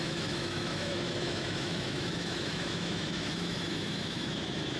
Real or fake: fake